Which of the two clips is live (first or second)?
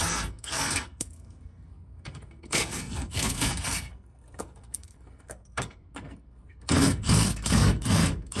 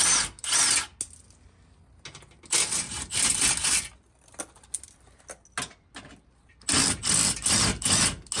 second